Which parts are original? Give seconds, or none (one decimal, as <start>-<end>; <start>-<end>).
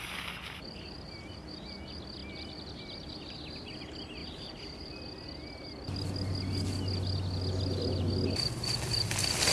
0.0-4.2; 4.9-9.5